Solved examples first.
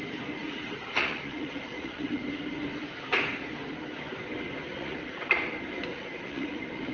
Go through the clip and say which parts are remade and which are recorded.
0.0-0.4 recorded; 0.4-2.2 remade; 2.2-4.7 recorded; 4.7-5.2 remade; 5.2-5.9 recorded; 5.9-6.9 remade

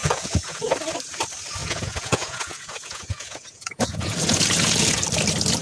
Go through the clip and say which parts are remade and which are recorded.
0.0-0.7 remade; 0.7-1.6 recorded; 1.6-5.0 remade; 5.0-5.6 recorded

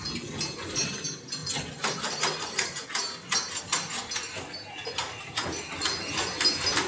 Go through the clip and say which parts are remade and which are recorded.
0.0-6.9 recorded

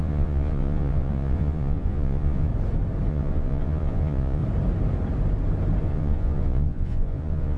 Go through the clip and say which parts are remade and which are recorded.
0.0-2.5 remade; 2.5-3.1 recorded; 3.1-4.4 remade; 4.4-5.8 recorded; 5.8-7.6 remade

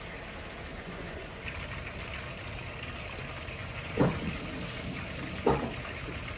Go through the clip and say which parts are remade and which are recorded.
0.0-0.7 recorded; 0.7-1.4 remade; 1.4-3.6 recorded; 3.6-4.3 remade; 4.3-6.4 recorded

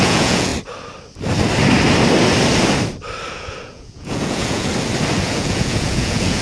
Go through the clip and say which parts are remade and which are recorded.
0.0-0.5 remade; 0.5-3.3 recorded; 3.3-4.7 remade; 4.7-5.2 recorded; 5.2-6.4 remade

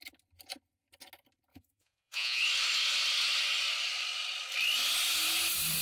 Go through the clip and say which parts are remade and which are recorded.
0.0-1.5 recorded; 1.5-2.4 remade; 2.4-5.8 recorded

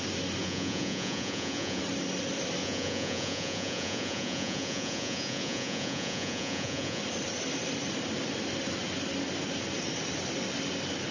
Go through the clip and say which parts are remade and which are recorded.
0.0-0.4 recorded; 0.4-1.8 remade; 1.8-2.6 recorded; 2.6-7.0 remade; 7.0-11.1 recorded